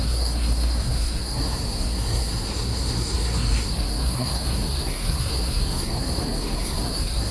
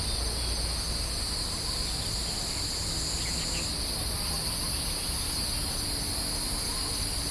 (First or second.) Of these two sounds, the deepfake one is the first